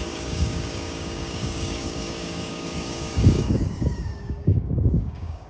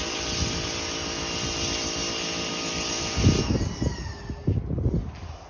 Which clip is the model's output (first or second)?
first